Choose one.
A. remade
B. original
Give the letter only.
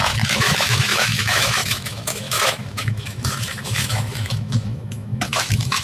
A